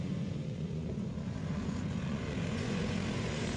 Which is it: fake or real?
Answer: fake